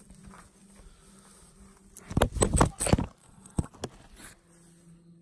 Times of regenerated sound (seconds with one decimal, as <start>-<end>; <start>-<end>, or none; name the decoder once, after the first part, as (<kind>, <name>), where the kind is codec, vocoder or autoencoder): 3.2-3.7 (vocoder, Vocos)